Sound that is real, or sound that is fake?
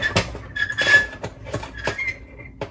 real